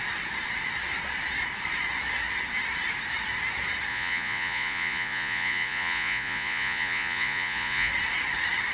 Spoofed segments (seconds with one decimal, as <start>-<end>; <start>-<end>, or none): 3.9-7.9